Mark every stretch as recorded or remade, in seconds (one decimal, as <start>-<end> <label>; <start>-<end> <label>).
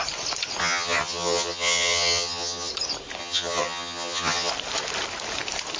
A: 0.0-0.6 recorded; 0.6-2.7 remade; 2.7-3.2 recorded; 3.2-4.5 remade; 4.5-5.8 recorded